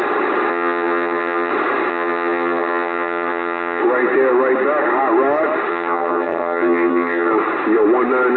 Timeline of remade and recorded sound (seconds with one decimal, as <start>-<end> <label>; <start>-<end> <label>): 0.0-0.5 recorded; 0.5-1.5 remade; 1.5-1.9 recorded; 1.9-3.8 remade; 3.8-5.7 recorded; 5.7-7.3 remade; 7.3-8.4 recorded